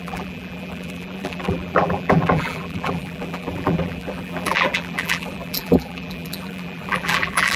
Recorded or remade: remade